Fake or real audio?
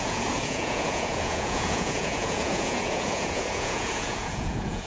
fake